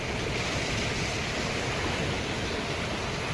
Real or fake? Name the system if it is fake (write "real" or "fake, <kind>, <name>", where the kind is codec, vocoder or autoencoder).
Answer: real